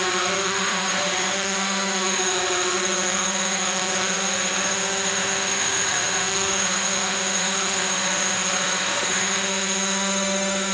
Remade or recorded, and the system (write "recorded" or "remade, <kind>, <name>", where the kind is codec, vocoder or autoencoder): remade, autoencoder, DAC-VAE